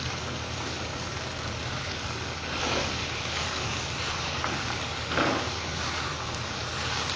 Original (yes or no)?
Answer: no